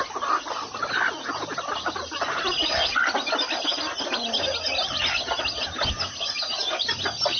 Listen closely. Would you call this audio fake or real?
real